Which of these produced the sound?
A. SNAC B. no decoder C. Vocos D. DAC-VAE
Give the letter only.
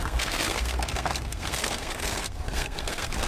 A